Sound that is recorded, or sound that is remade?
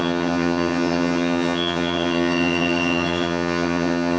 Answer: remade